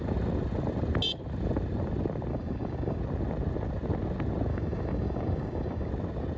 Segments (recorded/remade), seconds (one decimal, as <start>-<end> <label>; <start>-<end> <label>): 0.0-2.3 recorded; 2.3-3.0 remade; 3.0-4.5 recorded; 4.5-5.9 remade; 5.9-6.4 recorded